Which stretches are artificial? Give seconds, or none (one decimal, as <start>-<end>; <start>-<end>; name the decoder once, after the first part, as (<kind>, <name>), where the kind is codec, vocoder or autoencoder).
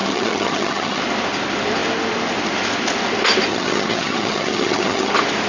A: 0.0-1.0 (vocoder, HiFi-GAN); 3.5-5.1